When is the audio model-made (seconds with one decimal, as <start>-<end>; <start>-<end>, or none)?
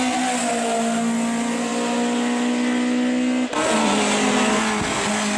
none